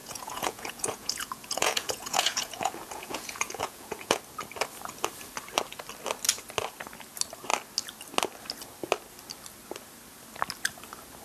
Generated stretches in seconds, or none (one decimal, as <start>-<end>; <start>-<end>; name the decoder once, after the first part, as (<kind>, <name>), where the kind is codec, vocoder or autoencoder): 0.0-4.2 (vocoder, Vocos)

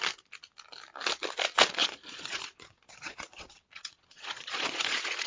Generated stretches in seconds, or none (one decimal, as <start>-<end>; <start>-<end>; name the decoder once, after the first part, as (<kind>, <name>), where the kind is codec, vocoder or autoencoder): 1.8-5.3 (vocoder, Vocos)

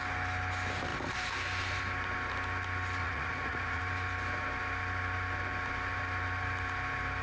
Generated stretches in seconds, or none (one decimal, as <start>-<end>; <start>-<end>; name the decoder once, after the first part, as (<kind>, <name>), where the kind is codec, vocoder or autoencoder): 3.0-3.8 (vocoder, Vocos)

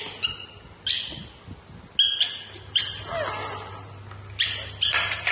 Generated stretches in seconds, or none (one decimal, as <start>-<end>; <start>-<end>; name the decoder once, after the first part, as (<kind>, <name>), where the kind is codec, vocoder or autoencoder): none

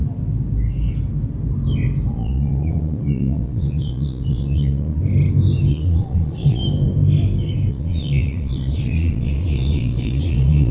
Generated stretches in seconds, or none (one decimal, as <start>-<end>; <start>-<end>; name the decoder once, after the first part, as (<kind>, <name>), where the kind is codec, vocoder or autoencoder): 2.1-5.0 (vocoder, Vocos); 5.7-6.6; 7.7-10.7

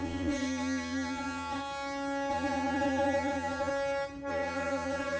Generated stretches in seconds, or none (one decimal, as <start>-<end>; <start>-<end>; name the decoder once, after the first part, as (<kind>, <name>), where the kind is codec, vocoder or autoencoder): 0.0-1.6 (vocoder, Vocos); 2.3-3.7; 4.3-5.2

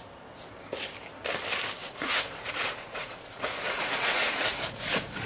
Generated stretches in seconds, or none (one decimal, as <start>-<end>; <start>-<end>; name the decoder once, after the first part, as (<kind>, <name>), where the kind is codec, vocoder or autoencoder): 1.8-5.3 (vocoder, Vocos)